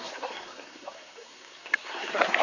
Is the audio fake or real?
fake